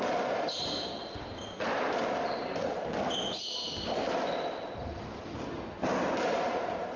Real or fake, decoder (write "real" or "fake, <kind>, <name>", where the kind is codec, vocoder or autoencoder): real